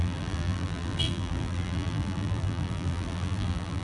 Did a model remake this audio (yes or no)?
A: yes